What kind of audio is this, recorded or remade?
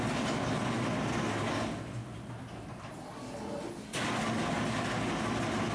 recorded